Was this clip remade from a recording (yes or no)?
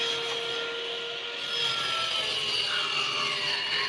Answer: no